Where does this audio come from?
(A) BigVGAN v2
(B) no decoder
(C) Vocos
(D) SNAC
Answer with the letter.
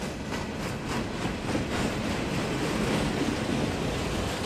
B